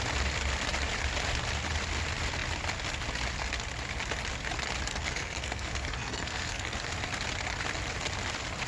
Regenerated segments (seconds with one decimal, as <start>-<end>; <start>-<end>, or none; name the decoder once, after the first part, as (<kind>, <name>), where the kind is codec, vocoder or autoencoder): 4.9-6.9 (codec, SNAC)